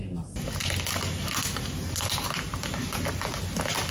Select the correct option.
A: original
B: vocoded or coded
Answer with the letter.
A